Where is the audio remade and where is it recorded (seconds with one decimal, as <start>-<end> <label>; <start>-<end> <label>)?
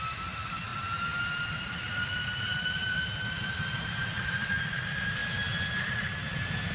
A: 0.0-0.7 remade; 0.7-1.5 recorded; 1.5-5.2 remade; 5.2-5.9 recorded; 5.9-6.7 remade